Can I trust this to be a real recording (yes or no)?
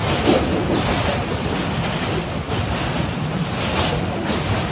yes